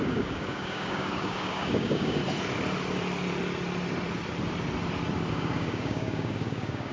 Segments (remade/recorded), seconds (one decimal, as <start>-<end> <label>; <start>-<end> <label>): 0.0-2.2 remade; 2.2-5.3 recorded; 5.3-6.9 remade